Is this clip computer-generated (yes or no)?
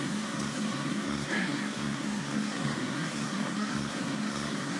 yes